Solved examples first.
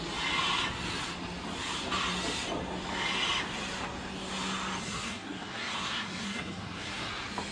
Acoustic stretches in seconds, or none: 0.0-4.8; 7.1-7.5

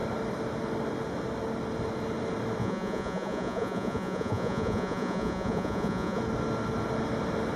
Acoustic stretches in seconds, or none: 0.0-2.6; 6.2-7.6

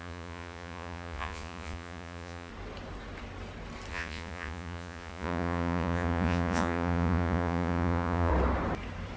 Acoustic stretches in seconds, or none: 2.5-3.9; 8.3-9.2

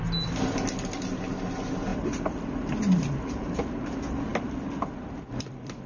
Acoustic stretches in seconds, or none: 0.0-5.9

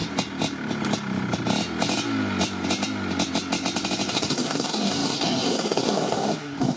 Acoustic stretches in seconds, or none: 0.0-4.1

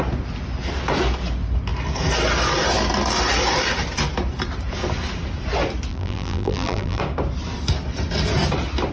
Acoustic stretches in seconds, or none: 0.0-5.9; 7.0-8.9